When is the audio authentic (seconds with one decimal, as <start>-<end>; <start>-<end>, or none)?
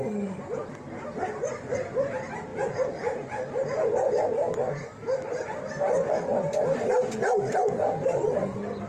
0.0-8.9